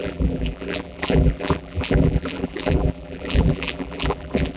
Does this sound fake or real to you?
fake